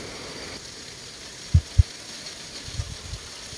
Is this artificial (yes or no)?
no